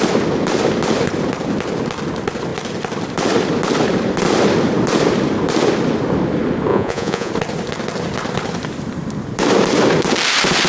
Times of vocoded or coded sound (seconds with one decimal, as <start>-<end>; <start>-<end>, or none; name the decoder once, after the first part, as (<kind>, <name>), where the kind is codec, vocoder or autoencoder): 6.7-7.3 (vocoder, Vocos)